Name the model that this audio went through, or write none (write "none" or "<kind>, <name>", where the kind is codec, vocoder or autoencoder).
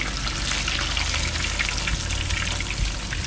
none